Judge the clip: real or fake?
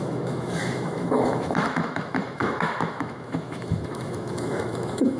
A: fake